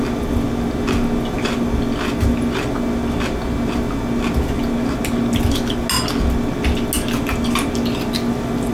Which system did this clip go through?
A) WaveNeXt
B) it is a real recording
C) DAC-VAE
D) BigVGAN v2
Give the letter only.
B